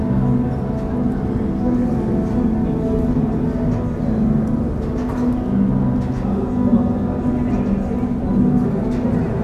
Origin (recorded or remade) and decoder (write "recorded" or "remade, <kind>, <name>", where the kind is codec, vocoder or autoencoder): recorded